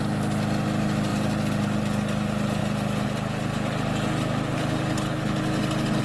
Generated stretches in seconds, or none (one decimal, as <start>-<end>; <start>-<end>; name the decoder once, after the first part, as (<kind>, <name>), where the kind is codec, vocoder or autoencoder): none